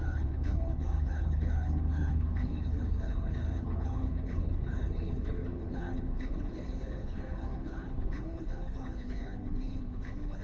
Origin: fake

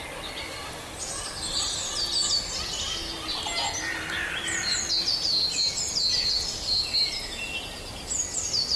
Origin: real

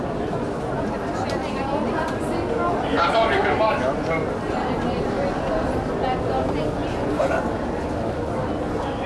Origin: real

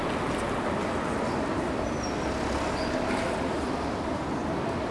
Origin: real